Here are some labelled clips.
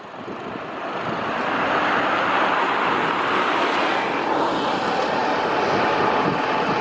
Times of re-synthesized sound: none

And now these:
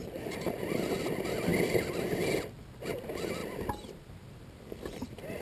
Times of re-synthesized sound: 3.4-5.4 (vocoder, BigVGAN v2)

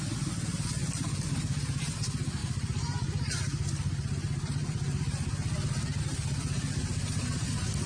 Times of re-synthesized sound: 2.4-6.0 (vocoder, BigVGAN v2)